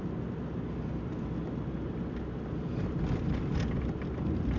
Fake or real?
real